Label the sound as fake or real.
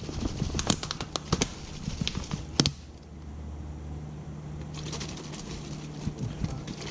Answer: real